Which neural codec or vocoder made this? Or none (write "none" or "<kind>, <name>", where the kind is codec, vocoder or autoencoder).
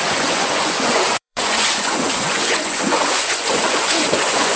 vocoder, Vocos